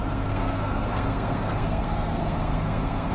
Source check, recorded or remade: remade